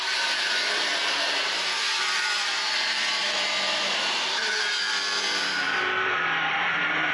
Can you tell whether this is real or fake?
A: fake